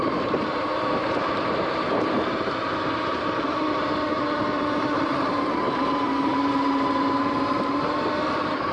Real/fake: fake